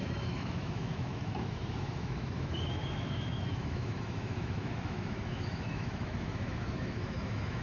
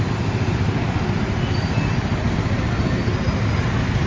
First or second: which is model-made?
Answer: first